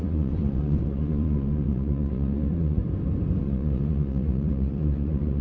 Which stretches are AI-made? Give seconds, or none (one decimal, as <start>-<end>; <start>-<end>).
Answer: 0.0-2.8; 3.4-5.4